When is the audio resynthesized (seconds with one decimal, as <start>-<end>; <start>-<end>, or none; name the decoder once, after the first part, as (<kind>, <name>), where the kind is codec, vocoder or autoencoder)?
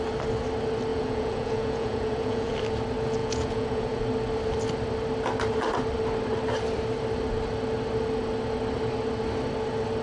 0.9-2.5 (vocoder, Vocos); 3.2-4.0